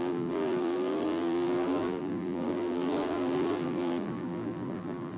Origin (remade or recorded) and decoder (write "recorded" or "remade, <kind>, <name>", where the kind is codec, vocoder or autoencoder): remade, vocoder, BigVGAN v2